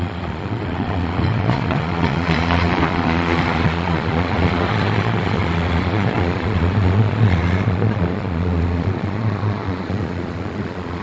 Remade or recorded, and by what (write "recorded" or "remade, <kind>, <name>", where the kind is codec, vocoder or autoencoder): remade, vocoder, Vocos